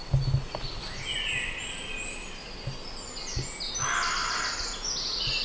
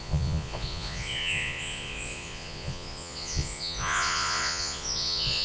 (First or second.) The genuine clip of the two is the first